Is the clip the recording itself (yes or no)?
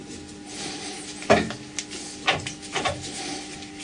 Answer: yes